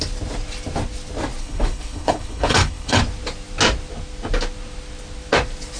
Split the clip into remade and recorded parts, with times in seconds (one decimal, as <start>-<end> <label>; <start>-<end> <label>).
0.0-1.4 recorded; 1.4-3.0 remade; 3.0-5.8 recorded